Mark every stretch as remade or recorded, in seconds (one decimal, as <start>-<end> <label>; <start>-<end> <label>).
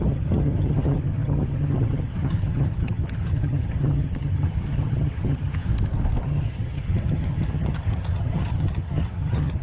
0.0-5.7 remade; 5.7-6.2 recorded; 6.2-9.6 remade